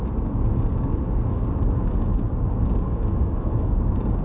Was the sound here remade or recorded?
remade